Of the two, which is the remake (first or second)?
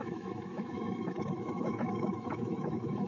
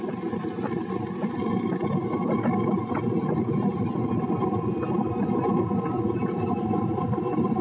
first